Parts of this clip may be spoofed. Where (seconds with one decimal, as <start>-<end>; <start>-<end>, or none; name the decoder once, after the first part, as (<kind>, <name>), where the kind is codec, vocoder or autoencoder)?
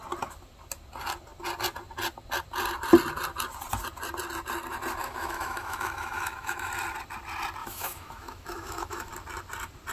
5.0-6.7 (autoencoder, DAC-VAE); 7.6-9.1